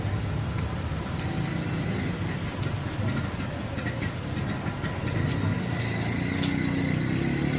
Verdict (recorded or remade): recorded